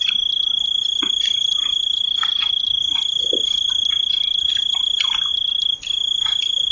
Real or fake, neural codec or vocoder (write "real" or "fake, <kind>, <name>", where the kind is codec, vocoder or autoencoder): real